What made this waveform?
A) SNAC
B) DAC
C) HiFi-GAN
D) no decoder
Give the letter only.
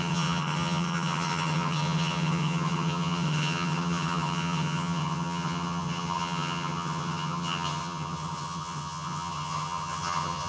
C